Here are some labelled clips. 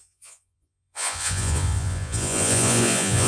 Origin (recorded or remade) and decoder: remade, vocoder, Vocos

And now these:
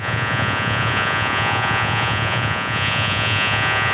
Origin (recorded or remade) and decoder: remade, vocoder, Vocos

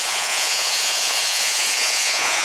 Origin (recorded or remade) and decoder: remade, vocoder, Vocos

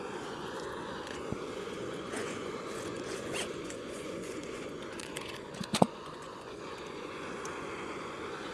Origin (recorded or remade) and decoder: remade, vocoder, Vocos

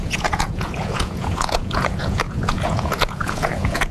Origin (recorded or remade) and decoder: remade, vocoder, Vocos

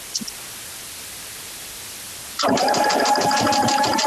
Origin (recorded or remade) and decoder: recorded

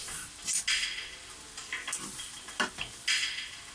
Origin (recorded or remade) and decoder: recorded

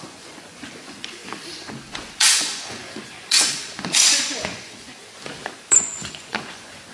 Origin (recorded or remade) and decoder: remade, vocoder, Vocos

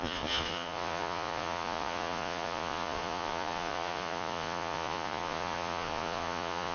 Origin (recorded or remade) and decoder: remade, vocoder, Vocos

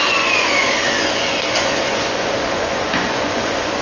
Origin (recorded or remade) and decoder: remade, vocoder, Vocos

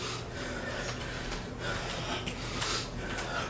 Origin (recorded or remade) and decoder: recorded